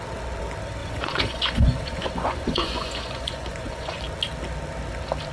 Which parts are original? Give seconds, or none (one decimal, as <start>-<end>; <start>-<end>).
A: 0.0-0.8; 4.0-5.3